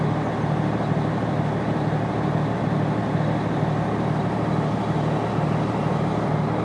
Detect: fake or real real